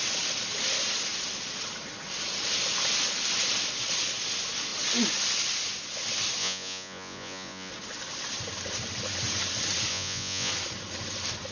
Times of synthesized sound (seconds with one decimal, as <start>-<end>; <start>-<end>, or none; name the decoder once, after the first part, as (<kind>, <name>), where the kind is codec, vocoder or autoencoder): 6.4-7.7 (vocoder, Vocos); 9.9-10.5